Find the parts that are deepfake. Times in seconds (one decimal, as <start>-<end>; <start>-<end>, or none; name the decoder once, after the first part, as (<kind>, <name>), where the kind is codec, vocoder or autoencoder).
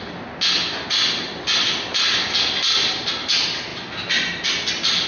none